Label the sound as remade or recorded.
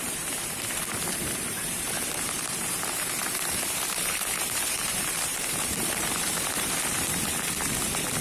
remade